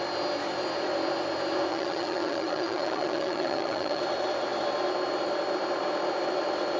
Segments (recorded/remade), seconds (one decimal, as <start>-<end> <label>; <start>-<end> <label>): 0.0-1.7 recorded; 1.7-4.0 remade; 4.0-6.8 recorded